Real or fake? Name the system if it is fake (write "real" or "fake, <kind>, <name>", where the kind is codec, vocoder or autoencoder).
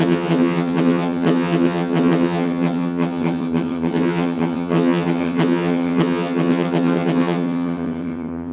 fake, vocoder, HiFi-GAN